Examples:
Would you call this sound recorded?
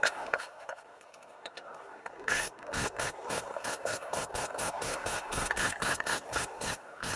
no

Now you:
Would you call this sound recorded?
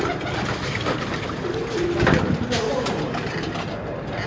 yes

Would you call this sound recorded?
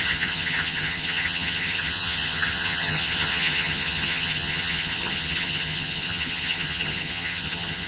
no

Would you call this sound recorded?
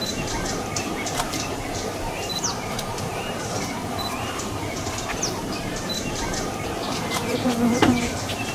no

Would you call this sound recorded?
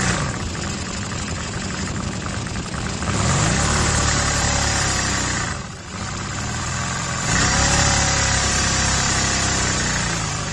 no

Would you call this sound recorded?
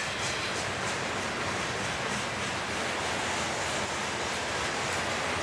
yes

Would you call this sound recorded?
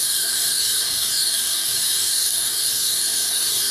no